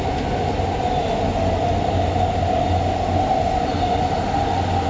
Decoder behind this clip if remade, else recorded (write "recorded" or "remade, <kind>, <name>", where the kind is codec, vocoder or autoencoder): recorded